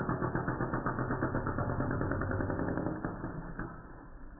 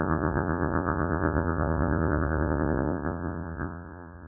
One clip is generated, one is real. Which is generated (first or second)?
second